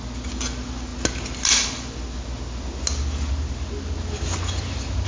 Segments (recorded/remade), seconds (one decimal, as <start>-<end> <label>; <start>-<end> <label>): 0.0-5.1 recorded